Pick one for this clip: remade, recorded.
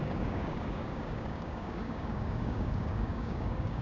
remade